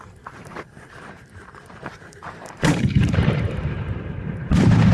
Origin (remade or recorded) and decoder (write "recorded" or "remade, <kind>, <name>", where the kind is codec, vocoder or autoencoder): remade, vocoder, BigVGAN v2